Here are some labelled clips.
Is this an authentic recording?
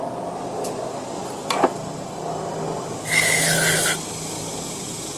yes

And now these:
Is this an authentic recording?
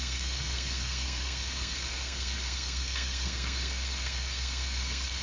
no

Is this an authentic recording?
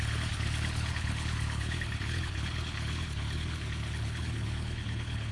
no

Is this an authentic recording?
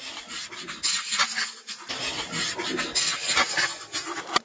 yes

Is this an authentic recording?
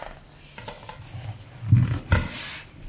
yes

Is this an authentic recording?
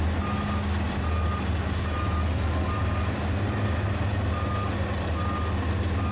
yes